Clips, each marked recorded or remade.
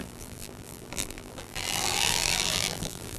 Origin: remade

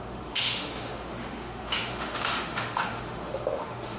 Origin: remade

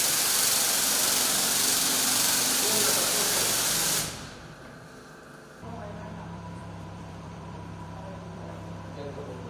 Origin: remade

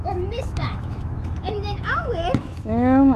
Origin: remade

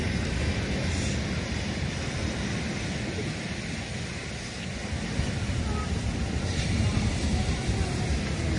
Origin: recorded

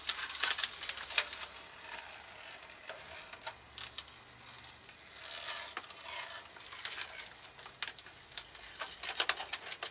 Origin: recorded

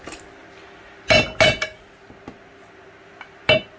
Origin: recorded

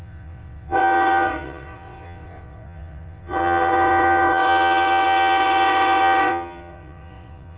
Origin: remade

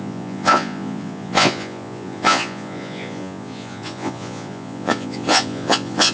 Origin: remade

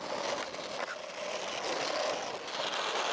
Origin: recorded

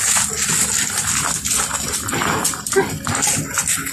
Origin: recorded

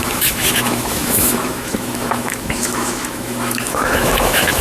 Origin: remade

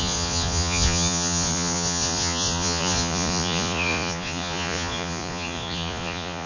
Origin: remade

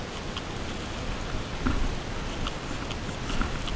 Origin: recorded